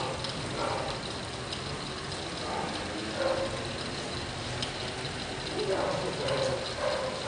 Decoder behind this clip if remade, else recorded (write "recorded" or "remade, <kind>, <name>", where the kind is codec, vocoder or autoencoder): recorded